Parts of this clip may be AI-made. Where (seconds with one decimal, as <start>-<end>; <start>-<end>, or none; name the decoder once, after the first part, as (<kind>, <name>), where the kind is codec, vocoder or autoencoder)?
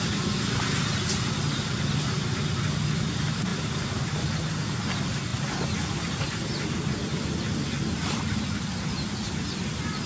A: 5.3-8.4 (vocoder, BigVGAN v2)